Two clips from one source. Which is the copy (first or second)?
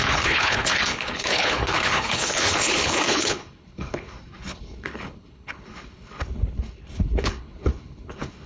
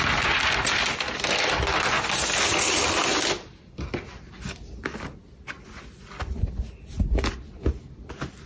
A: first